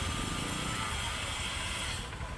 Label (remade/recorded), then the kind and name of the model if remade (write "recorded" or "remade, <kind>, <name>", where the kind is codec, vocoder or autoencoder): recorded